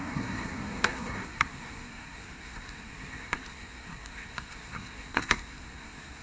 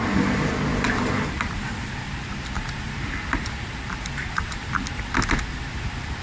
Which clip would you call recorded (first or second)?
second